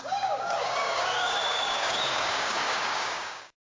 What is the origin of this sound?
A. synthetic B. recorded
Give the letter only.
A